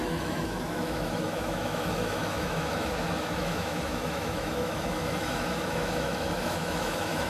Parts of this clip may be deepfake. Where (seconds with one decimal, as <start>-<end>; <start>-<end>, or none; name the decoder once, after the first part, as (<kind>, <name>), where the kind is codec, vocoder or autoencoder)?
0.0-7.3 (autoencoder, DAC-VAE)